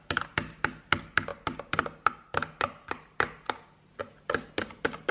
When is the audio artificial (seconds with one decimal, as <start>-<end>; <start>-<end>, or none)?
none